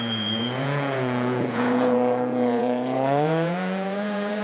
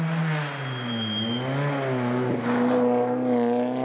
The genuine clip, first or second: second